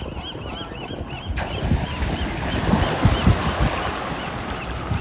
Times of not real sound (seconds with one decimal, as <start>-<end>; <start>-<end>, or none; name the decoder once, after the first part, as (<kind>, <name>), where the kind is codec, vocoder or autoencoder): 1.3-4.3 (vocoder, BigVGAN v2)